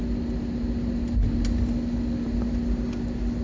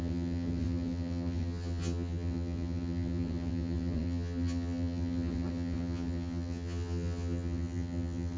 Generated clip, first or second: second